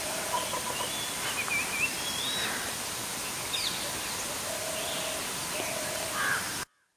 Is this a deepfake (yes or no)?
no